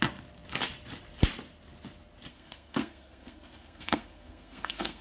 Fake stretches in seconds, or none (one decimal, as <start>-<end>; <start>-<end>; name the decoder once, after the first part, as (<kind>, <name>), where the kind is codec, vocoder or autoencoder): 2.3-5.0 (codec, SNAC)